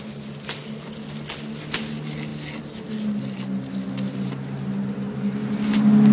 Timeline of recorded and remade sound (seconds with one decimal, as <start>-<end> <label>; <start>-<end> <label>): 0.0-6.1 recorded

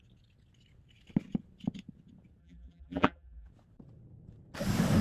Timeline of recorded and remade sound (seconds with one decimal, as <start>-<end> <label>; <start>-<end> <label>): 0.0-2.4 recorded; 2.4-3.5 remade; 3.5-5.0 recorded

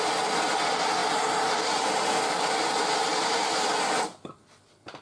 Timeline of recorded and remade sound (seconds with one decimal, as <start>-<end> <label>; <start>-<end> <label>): 0.0-1.0 recorded; 1.0-4.0 remade; 4.0-5.0 recorded

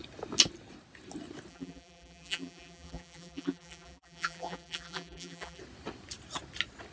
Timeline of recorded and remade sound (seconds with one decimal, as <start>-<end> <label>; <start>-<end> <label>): 0.0-1.5 recorded; 1.5-5.6 remade; 5.6-6.9 recorded

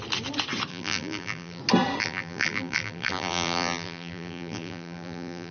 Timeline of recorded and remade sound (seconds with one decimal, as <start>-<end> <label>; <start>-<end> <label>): 0.0-0.7 recorded; 0.7-1.6 remade; 1.6-2.0 recorded; 2.0-5.5 remade

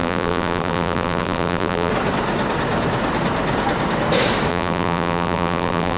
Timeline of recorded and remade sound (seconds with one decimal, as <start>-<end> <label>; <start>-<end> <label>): 0.0-1.9 remade; 1.9-4.5 recorded; 4.5-6.0 remade

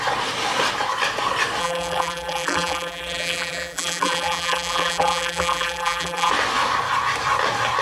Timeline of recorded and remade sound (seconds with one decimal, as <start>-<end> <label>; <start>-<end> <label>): 0.0-1.6 recorded; 1.6-6.3 remade; 6.3-7.8 recorded

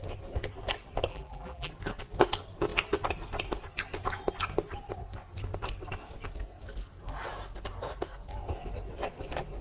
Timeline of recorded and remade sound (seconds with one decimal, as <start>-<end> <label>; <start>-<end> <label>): 0.0-1.1 recorded; 1.1-1.7 remade; 1.7-9.6 recorded